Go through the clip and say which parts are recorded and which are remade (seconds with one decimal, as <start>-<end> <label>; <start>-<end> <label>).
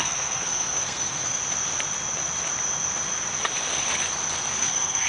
0.0-1.4 remade; 1.4-4.5 recorded; 4.5-5.1 remade